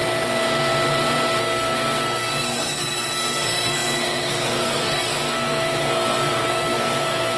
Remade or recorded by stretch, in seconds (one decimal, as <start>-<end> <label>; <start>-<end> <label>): 0.0-1.4 recorded; 1.4-7.4 remade